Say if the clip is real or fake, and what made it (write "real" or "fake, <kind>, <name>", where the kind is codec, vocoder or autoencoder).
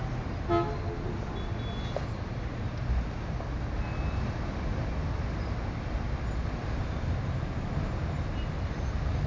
real